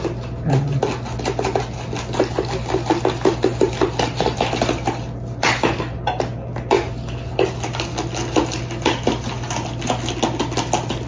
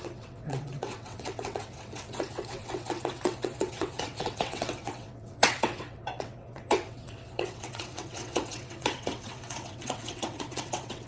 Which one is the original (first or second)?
first